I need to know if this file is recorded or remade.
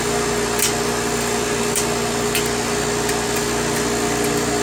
recorded